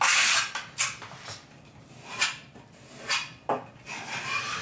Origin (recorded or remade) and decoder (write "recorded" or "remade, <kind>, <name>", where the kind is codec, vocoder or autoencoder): recorded